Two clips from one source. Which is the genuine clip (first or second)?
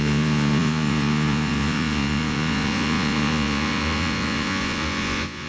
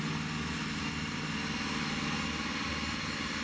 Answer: second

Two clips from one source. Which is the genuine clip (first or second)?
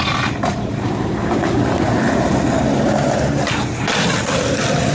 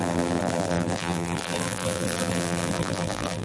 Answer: first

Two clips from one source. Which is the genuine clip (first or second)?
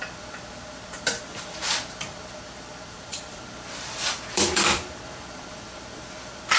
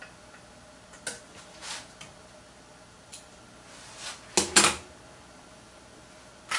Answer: second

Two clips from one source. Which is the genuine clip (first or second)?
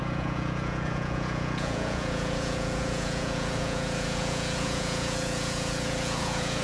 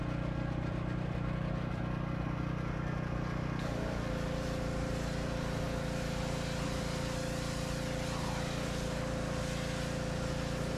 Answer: second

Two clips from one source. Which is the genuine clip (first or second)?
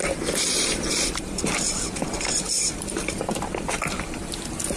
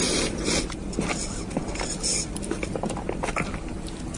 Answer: second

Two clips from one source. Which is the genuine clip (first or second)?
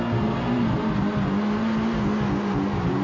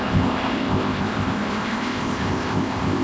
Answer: first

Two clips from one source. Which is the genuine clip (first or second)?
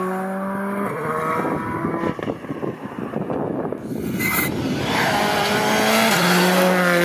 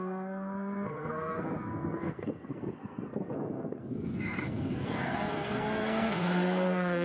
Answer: first